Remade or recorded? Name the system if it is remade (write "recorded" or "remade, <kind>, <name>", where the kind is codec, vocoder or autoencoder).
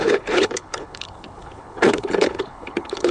remade, codec, HILCodec